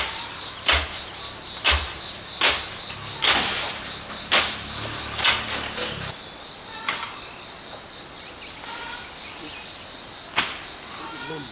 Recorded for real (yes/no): yes